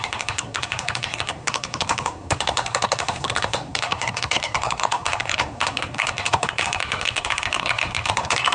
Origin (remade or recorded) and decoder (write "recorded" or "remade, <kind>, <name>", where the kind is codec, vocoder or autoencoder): remade, codec, SNAC